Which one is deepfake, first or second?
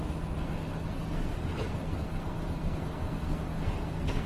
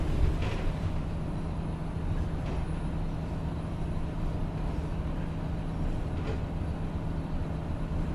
first